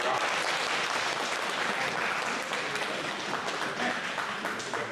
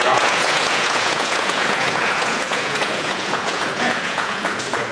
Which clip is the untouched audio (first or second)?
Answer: first